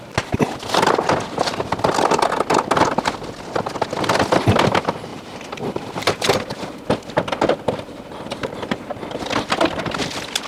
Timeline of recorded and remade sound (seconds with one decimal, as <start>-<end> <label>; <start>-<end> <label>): 0.0-5.1 recorded; 5.1-6.7 remade; 6.7-8.4 recorded; 8.4-8.9 remade; 8.9-10.5 recorded